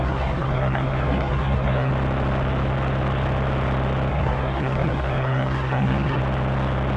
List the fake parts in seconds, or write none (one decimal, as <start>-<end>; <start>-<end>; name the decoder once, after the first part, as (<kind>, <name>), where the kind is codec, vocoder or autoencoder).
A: 0.0-1.9 (codec, SNAC); 4.1-6.2

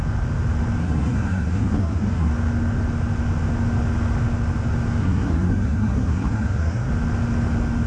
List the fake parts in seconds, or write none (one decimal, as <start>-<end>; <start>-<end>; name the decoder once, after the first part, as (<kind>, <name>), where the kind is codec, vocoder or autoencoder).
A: 0.8-2.3 (codec, SNAC); 5.0-6.9

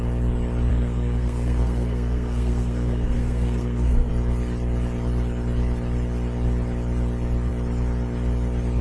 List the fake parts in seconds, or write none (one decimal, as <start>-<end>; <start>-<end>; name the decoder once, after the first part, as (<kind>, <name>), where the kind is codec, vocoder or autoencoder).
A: 0.7-4.1 (codec, SNAC)

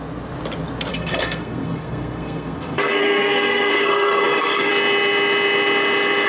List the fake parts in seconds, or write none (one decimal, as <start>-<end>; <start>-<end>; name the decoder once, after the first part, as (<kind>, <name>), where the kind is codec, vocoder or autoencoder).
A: 0.9-4.7 (codec, SNAC)